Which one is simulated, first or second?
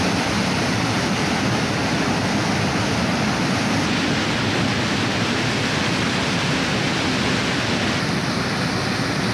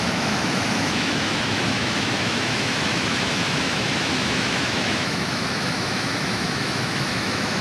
second